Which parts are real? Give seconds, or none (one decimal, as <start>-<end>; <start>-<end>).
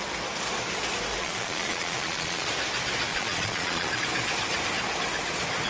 0.0-1.2; 2.5-3.1; 4.0-5.7